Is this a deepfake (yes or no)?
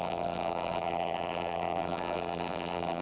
yes